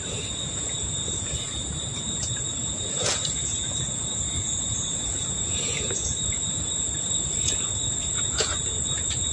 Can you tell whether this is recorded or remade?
remade